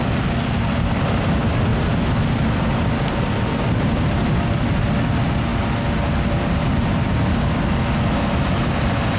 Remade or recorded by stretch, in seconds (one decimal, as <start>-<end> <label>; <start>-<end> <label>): 0.0-9.2 recorded